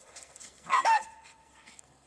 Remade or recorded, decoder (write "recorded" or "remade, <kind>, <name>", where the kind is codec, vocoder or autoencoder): remade, codec, SNAC